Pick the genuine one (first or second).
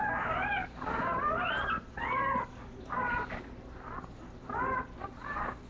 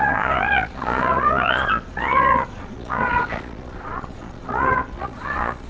first